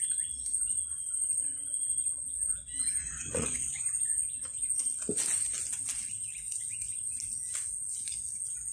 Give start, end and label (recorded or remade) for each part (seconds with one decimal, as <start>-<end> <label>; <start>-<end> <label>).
0.0-3.0 recorded; 3.0-3.8 remade; 3.8-8.7 recorded

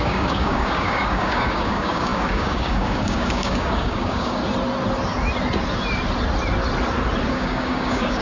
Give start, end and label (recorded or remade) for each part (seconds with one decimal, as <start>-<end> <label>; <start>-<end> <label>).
0.0-4.4 remade; 4.4-7.3 recorded; 7.3-8.2 remade

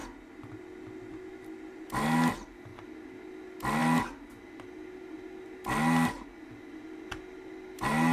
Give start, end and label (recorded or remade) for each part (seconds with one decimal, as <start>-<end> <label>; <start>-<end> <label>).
0.0-8.1 recorded

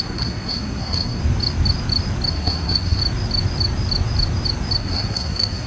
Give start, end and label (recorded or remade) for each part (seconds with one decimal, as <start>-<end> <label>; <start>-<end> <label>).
0.0-1.2 remade; 1.2-2.3 recorded; 2.3-3.0 remade; 3.0-4.8 recorded; 4.8-5.7 remade

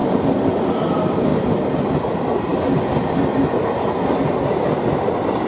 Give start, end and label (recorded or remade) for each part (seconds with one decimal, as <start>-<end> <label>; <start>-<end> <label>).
0.0-5.5 recorded

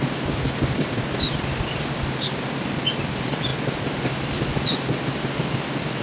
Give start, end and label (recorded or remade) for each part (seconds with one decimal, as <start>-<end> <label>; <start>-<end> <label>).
0.0-6.0 recorded